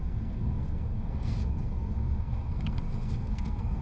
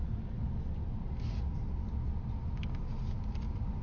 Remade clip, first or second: first